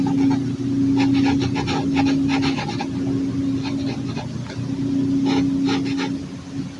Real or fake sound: real